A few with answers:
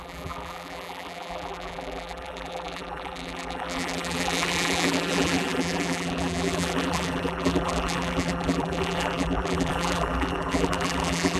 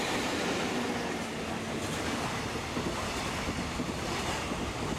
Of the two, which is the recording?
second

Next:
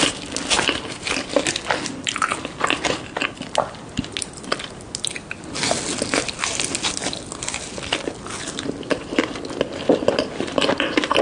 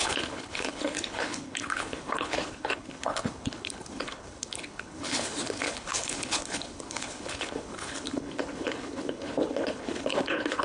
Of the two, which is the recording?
first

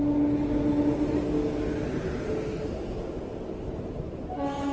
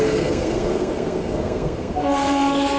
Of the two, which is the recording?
first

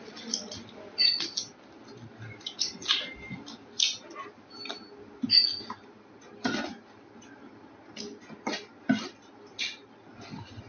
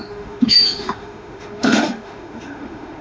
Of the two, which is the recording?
first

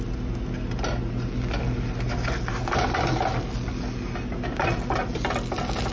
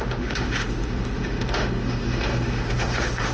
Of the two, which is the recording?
first